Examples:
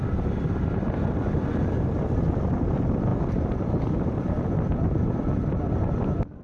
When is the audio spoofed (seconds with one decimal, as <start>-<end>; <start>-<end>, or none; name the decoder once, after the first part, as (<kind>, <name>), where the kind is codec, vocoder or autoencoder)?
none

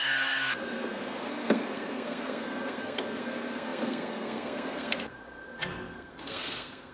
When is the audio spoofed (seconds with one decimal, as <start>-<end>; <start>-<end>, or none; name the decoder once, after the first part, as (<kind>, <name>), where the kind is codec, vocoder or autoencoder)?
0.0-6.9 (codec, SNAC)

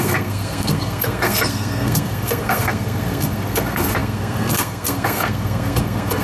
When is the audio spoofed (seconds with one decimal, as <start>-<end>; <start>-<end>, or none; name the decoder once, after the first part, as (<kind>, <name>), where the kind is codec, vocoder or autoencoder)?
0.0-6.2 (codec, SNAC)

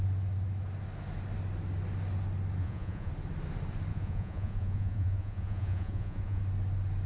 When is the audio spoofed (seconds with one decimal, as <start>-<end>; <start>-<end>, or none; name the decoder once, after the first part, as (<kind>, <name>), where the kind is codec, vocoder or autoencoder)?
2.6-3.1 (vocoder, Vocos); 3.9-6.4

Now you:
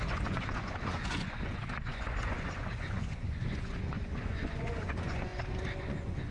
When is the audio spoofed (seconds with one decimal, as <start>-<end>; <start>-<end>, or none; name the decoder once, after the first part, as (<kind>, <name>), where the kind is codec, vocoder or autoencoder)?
0.0-5.3 (vocoder, Vocos); 5.8-6.3

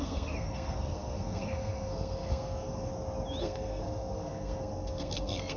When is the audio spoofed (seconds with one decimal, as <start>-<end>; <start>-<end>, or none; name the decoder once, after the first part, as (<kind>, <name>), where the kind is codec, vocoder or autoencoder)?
0.0-2.9 (codec, SNAC); 3.4-5.6

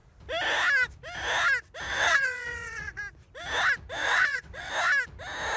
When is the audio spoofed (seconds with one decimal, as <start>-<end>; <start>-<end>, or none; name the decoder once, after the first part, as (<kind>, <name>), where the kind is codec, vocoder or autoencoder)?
1.9-3.0 (vocoder, WaveNeXt); 4.0-4.7

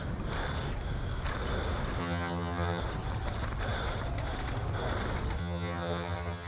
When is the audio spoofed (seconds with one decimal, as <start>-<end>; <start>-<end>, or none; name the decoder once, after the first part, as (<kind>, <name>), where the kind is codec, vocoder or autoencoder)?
2.0-2.8 (vocoder, HiFi-GAN); 5.4-6.5